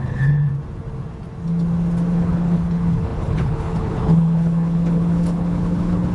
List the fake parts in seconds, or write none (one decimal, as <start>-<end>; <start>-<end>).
0.0-0.5; 2.1-6.1